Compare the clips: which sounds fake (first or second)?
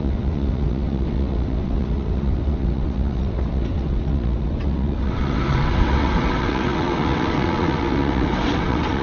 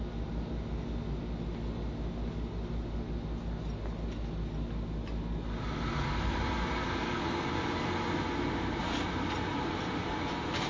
first